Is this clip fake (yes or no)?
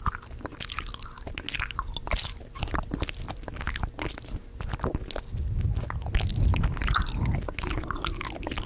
no